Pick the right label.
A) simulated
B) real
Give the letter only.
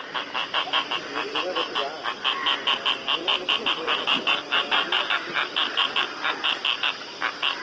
B